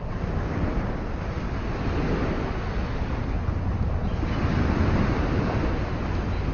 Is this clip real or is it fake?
real